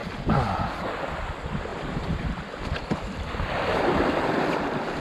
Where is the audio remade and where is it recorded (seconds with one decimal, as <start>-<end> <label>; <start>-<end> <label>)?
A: 0.0-0.6 remade; 0.6-1.7 recorded; 1.7-3.9 remade; 3.9-5.0 recorded